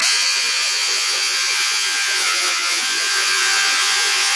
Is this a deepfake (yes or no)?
yes